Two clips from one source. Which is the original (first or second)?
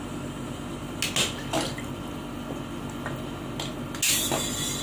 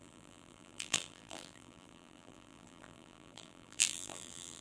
first